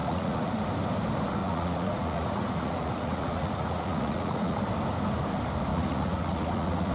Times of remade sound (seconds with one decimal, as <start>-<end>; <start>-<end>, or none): 0.0-0.5; 1.4-4.6; 5.7-6.9